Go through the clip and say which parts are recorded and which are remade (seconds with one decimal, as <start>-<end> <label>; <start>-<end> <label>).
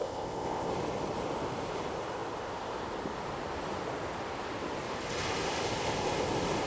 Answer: 0.0-0.7 remade; 0.7-6.7 recorded